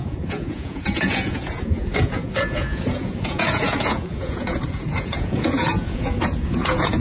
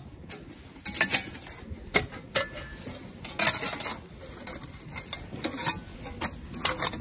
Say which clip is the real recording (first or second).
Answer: second